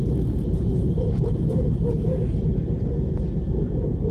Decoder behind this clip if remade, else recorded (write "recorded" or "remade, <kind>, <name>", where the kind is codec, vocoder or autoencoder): recorded